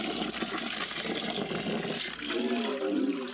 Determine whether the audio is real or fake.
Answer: real